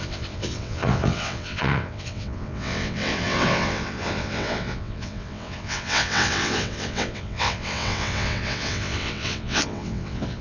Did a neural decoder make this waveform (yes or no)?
yes